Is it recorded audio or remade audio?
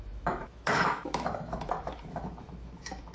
remade